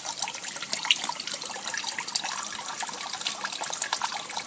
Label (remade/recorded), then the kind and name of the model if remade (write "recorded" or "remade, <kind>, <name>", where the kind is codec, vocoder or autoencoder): remade, vocoder, BigVGAN v2